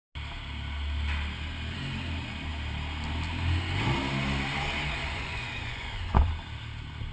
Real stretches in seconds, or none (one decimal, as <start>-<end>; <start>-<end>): 0.0-5.0; 6.3-7.1